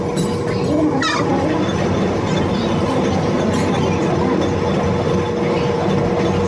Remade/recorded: recorded